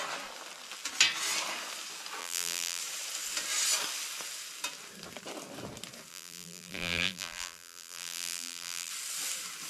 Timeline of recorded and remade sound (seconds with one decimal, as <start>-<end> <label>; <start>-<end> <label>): 0.0-2.2 recorded; 2.2-2.8 remade; 2.8-6.1 recorded; 6.1-8.9 remade; 8.9-9.7 recorded